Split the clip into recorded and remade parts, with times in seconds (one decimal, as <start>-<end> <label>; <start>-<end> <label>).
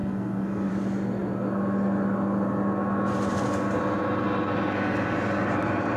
0.0-0.7 remade; 0.7-6.0 recorded